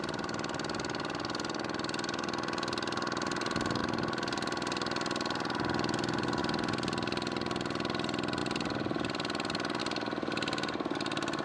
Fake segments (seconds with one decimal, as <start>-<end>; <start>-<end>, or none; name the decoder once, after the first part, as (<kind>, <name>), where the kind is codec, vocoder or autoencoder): none